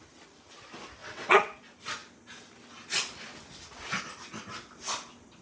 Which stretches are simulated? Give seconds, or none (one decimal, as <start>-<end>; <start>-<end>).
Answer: 1.0-1.6